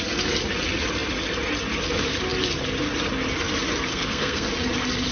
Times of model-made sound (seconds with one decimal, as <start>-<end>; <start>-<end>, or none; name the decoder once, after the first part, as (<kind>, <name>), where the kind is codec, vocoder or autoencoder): 3.9-4.5 (codec, SNAC)